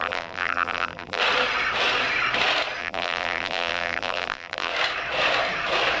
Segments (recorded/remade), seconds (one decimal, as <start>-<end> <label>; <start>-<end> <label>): 0.0-1.2 remade; 1.2-2.8 recorded; 2.8-4.7 remade; 4.7-6.0 recorded